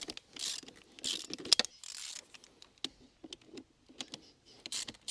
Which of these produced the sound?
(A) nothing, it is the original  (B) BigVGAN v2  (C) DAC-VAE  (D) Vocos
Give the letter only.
A